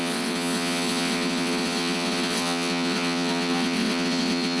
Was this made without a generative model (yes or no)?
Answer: no